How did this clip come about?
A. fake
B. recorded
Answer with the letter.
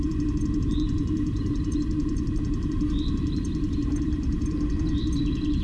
A